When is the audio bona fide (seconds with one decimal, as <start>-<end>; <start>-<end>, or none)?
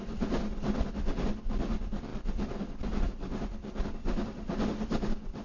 0.0-5.4